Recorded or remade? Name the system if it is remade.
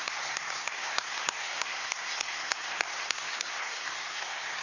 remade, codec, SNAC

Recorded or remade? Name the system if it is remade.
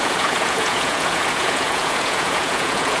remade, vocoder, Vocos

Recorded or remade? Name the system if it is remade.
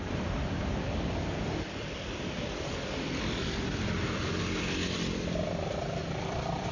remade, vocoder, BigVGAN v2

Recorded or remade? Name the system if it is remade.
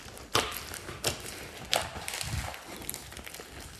recorded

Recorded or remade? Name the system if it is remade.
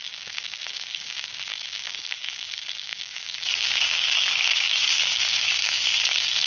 remade, codec, DAC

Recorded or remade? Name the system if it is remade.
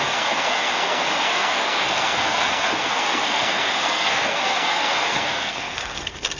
remade, codec, SNAC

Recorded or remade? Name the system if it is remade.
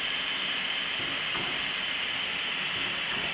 recorded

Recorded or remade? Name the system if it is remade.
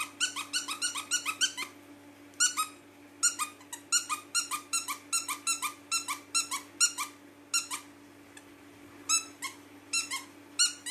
recorded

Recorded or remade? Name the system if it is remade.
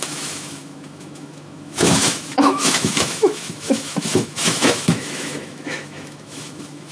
remade, autoencoder, DAC-VAE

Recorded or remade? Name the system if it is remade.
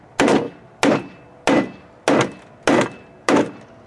recorded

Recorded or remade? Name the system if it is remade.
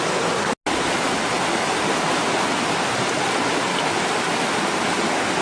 recorded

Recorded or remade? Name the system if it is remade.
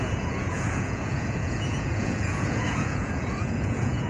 remade, vocoder, Vocos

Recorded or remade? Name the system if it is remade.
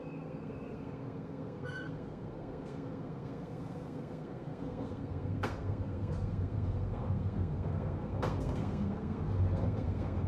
remade, codec, SNAC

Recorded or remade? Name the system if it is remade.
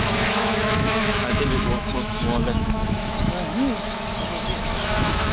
remade, autoencoder, DAC-VAE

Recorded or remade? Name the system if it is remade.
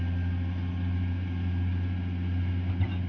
recorded